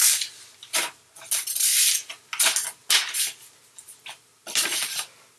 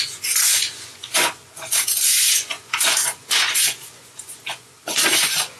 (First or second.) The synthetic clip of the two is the second